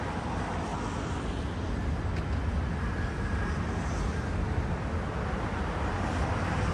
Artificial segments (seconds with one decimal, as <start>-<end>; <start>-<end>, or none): none